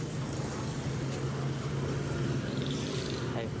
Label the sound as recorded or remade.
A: recorded